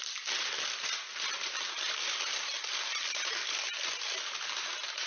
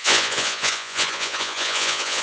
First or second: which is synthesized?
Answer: second